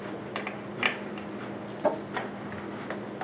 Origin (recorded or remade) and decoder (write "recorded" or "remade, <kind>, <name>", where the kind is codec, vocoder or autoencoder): recorded